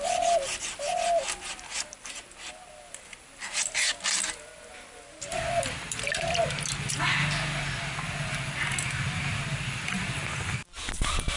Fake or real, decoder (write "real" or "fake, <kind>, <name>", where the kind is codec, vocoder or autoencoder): real